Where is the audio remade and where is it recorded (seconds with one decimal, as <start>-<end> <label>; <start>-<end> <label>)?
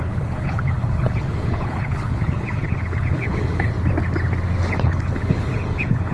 0.0-3.7 remade; 3.7-4.7 recorded; 4.7-6.1 remade